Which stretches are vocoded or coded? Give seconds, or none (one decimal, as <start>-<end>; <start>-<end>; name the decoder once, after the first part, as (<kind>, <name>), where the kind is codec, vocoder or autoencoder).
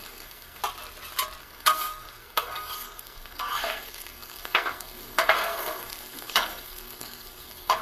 0.0-0.6 (codec, SNAC); 1.4-7.8